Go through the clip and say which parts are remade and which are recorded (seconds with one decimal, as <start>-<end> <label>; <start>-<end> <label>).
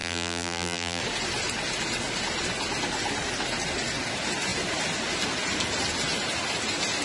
0.0-1.0 remade; 1.0-7.0 recorded